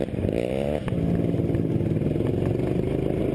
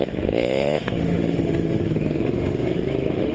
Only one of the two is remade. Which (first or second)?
second